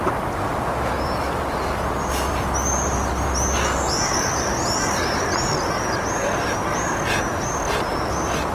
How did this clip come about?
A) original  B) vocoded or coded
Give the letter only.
A